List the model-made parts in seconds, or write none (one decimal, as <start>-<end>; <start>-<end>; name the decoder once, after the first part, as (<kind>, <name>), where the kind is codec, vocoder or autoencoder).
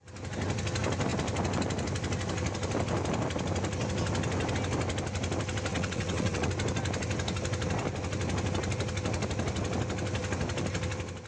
5.7-6.5 (vocoder, WaveNeXt)